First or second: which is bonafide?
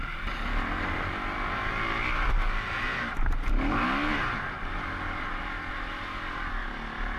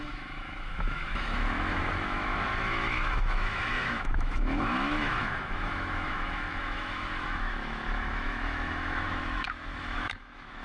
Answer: first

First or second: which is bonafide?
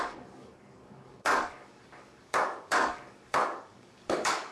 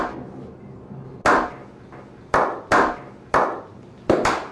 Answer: second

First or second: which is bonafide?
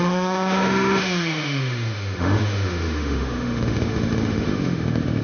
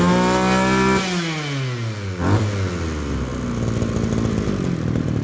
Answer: second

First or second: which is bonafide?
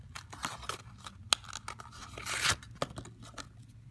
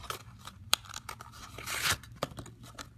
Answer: first